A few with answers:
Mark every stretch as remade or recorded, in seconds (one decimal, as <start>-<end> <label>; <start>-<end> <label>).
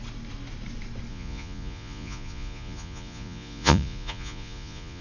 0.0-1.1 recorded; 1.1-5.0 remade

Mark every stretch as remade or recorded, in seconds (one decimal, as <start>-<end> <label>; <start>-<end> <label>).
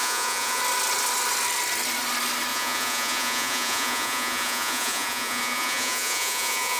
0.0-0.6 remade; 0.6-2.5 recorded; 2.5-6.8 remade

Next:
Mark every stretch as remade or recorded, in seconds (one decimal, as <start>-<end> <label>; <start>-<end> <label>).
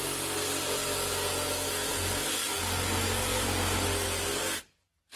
0.0-5.2 recorded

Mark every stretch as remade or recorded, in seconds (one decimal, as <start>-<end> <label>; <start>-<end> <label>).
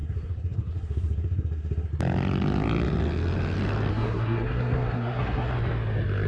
0.0-1.9 remade; 1.9-3.9 recorded; 3.9-5.5 remade; 5.5-6.3 recorded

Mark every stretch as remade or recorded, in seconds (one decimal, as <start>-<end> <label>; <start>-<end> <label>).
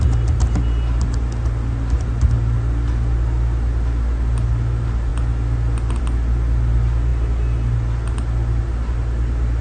0.0-9.6 recorded